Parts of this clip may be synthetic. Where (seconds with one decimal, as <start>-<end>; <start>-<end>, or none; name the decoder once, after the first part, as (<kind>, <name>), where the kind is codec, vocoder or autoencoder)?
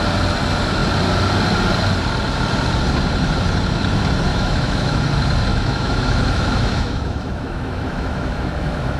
4.3-5.0 (autoencoder, DAC-VAE); 5.5-9.0